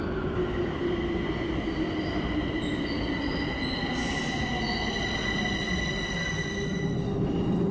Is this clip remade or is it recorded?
recorded